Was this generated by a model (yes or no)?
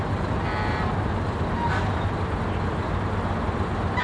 no